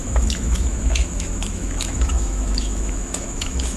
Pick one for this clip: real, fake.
fake